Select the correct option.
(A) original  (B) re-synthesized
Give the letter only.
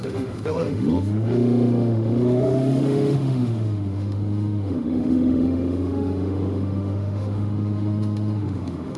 B